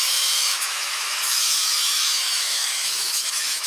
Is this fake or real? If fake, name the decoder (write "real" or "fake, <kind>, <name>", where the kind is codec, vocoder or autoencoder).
fake, autoencoder, DAC-VAE